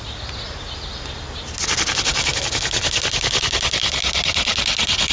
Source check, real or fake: real